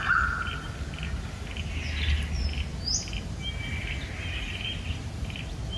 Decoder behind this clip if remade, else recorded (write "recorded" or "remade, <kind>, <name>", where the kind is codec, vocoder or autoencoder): recorded